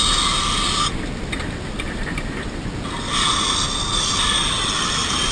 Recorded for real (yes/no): yes